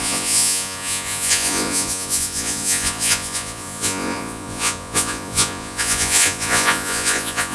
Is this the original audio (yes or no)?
no